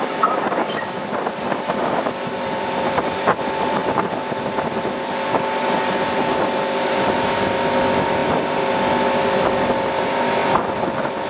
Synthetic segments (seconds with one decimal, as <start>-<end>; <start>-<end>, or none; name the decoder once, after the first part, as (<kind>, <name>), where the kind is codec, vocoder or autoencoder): none